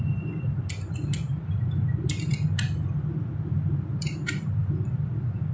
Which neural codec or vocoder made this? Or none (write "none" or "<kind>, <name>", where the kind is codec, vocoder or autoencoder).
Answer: none